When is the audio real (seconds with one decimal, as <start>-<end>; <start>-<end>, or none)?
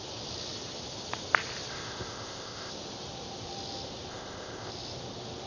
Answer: 0.0-1.7; 2.7-4.1; 4.7-5.5